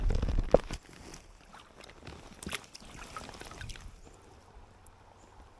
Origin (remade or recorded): recorded